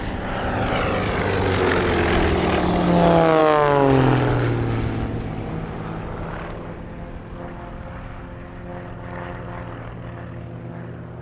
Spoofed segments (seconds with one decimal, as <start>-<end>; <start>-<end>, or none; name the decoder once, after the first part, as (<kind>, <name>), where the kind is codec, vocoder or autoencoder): none